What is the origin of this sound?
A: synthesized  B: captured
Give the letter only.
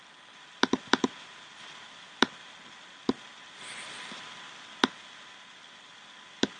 B